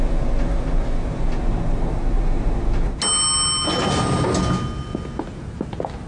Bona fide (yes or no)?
yes